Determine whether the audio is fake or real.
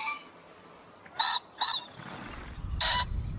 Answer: real